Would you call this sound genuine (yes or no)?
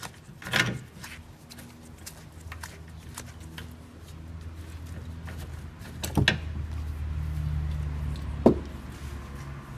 yes